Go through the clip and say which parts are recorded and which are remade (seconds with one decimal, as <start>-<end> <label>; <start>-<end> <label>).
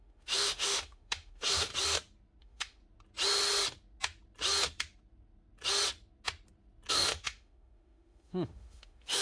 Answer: 0.0-1.7 remade; 1.7-2.4 recorded; 2.4-2.8 remade; 2.8-6.9 recorded; 6.9-9.2 remade